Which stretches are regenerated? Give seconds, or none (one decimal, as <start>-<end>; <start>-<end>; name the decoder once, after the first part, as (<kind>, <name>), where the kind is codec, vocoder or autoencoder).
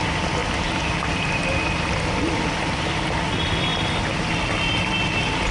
none